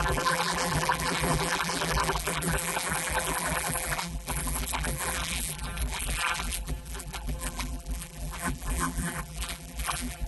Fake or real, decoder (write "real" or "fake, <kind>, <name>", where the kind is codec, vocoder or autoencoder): fake, vocoder, BigVGAN v2